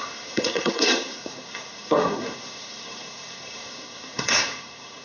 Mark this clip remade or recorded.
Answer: remade